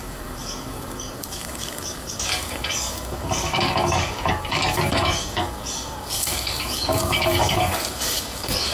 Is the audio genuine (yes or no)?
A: no